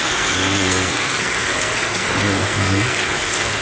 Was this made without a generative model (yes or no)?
no